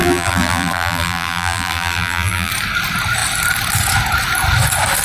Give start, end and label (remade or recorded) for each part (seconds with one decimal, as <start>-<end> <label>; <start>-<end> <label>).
0.0-2.5 remade; 2.5-5.0 recorded